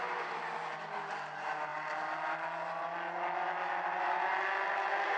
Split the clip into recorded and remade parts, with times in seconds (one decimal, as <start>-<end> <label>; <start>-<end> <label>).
0.0-5.2 recorded